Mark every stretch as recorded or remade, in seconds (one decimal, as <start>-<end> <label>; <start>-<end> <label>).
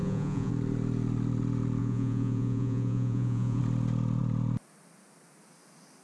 0.0-0.5 remade; 0.5-1.8 recorded; 1.8-3.6 remade; 3.6-6.0 recorded